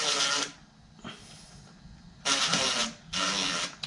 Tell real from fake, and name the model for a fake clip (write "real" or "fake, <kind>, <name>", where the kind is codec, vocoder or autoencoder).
real